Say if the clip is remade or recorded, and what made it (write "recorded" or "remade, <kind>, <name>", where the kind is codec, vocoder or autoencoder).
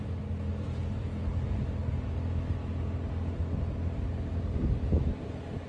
recorded